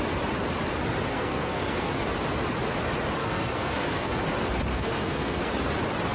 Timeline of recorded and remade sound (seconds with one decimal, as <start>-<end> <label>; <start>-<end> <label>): 0.0-1.1 recorded; 1.1-1.9 remade; 1.9-3.2 recorded; 3.2-4.1 remade; 4.1-4.7 recorded; 4.7-5.5 remade; 5.5-6.1 recorded